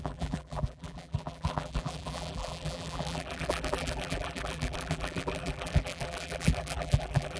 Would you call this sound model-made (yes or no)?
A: yes